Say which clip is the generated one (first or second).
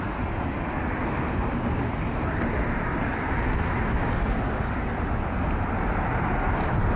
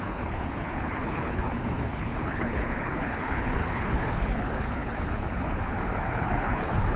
second